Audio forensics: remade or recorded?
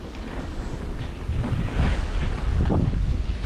remade